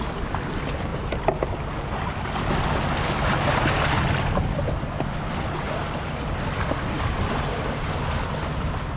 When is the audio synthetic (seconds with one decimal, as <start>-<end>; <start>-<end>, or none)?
none